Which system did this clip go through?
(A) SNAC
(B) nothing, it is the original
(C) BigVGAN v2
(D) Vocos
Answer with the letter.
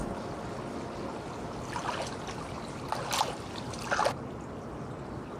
B